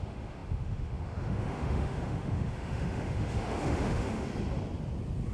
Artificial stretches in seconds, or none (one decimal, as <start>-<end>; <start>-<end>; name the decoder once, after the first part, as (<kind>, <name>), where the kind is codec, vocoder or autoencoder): 0.0-4.3 (autoencoder, DAC-VAE)